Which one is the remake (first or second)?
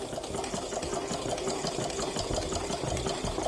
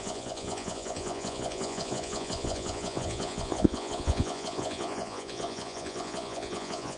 second